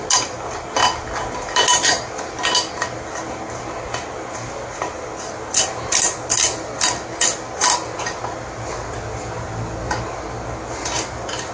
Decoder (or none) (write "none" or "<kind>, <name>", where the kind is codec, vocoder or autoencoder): none